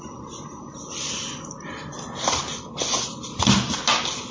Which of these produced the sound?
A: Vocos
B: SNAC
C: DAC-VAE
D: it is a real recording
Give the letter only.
D